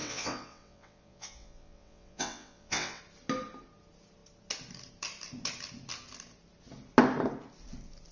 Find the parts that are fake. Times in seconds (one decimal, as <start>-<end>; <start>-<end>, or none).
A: 0.0-3.0